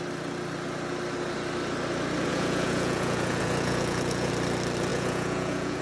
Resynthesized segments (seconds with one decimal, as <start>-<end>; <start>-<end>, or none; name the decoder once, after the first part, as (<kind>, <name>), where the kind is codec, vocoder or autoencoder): 2.3-4.3 (vocoder, Vocos); 4.9-5.8